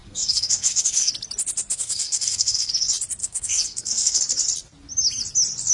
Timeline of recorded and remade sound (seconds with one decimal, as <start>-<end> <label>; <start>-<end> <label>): 0.0-1.1 remade; 1.1-1.7 recorded; 1.7-2.7 remade; 2.7-3.2 recorded; 3.2-4.2 remade; 4.2-5.7 recorded